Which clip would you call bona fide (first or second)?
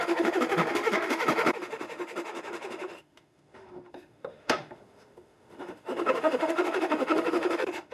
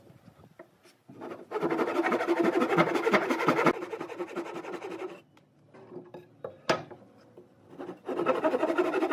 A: second